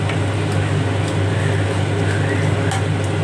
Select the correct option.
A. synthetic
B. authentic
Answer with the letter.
B